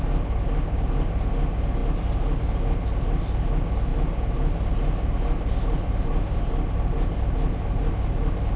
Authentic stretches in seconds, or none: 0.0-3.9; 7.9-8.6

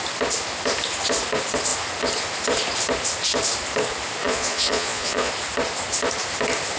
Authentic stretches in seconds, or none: 0.0-4.2; 5.3-6.8

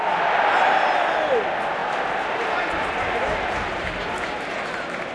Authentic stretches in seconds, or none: 0.0-5.1